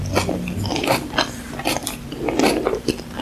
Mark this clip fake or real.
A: real